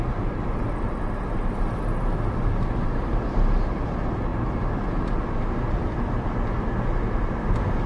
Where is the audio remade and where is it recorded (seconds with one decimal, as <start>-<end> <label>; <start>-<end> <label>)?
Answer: 0.0-4.3 recorded; 4.3-4.9 remade; 4.9-7.9 recorded